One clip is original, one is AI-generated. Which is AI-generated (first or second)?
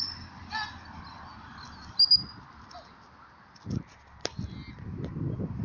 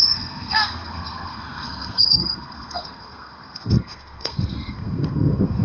second